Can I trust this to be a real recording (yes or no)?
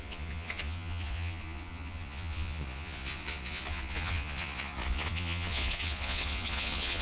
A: no